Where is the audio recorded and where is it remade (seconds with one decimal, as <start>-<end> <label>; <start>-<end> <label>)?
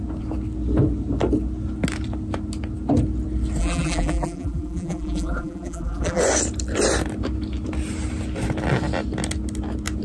0.0-3.6 recorded; 3.6-6.2 remade; 6.2-10.0 recorded